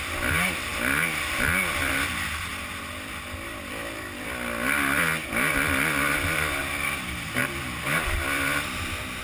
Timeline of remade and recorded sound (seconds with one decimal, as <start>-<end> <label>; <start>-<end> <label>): 0.0-9.2 recorded